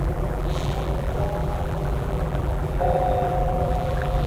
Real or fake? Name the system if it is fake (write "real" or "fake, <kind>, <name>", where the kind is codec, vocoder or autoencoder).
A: fake, vocoder, BigVGAN v2